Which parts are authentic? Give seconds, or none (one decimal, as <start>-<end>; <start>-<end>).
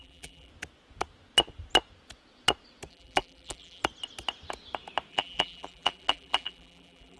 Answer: 0.5-2.9; 3.8-5.1